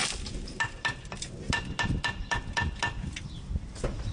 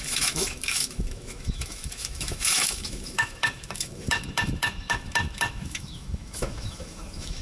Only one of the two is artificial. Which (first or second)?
second